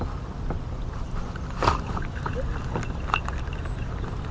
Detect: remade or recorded recorded